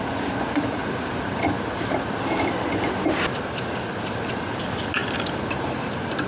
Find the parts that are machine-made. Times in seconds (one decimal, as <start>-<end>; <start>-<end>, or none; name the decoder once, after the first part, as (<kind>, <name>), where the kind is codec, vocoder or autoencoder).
none